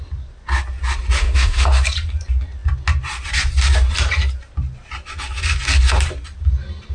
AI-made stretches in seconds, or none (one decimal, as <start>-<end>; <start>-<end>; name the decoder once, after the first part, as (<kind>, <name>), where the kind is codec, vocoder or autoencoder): 1.2-1.7 (autoencoder, DAC-VAE)